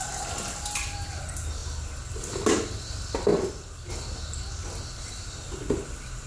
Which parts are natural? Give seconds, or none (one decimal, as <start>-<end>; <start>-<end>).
0.0-6.3